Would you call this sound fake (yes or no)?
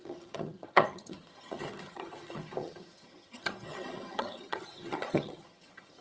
yes